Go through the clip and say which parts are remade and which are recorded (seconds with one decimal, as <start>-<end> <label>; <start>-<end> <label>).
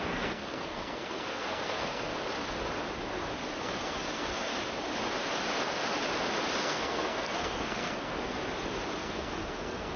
0.0-2.1 remade; 2.1-3.6 recorded; 3.6-4.5 remade; 4.5-6.6 recorded; 6.6-8.4 remade; 8.4-9.0 recorded; 9.0-10.0 remade